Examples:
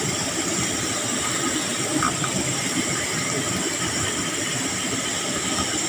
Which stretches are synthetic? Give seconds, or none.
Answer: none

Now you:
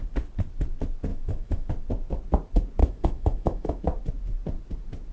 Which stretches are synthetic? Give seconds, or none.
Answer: 1.1-1.7 (autoencoder, DAC-VAE); 2.8-3.8

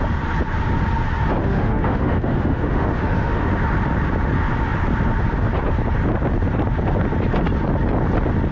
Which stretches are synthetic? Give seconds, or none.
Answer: 1.4-3.5 (autoencoder, DAC-VAE)

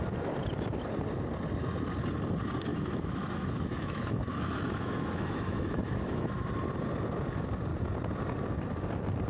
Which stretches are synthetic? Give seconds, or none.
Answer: 2.7-6.5 (autoencoder, DAC-VAE)

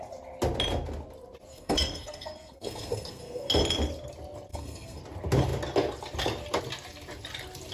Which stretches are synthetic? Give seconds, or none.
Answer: 1.5-3.5 (codec, SNAC); 4.5-5.0

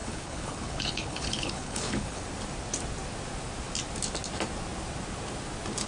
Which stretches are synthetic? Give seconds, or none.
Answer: 0.0-2.2 (codec, HILCodec)

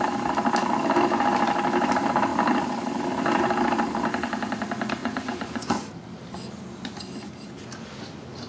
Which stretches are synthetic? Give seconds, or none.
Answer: 5.0-5.8 (vocoder, Vocos)